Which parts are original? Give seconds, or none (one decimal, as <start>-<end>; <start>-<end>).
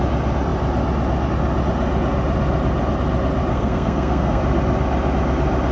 0.0-3.5; 4.4-5.7